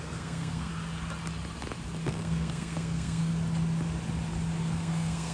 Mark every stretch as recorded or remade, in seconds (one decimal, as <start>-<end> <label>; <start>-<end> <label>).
0.0-0.7 remade; 0.7-2.0 recorded; 2.0-3.3 remade; 3.3-4.6 recorded; 4.6-5.3 remade